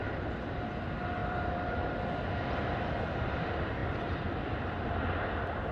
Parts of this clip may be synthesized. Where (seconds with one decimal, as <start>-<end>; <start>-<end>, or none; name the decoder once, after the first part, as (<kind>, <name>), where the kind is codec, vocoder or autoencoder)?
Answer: 0.0-0.6 (vocoder, BigVGAN v2); 1.2-2.0; 3.8-4.4